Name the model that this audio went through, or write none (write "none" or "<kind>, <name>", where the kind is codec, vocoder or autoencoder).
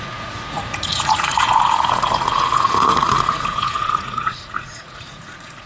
vocoder, Vocos